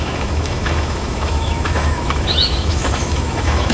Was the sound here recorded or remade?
remade